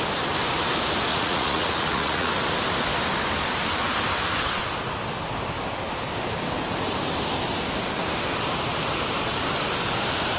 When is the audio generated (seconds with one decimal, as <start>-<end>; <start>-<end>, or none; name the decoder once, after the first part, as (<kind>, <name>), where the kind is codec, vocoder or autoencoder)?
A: 1.1-2.3 (vocoder, Vocos)